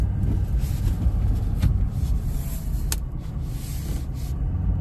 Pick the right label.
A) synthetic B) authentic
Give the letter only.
B